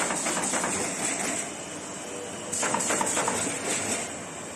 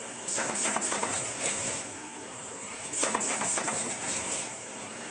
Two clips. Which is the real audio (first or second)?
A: first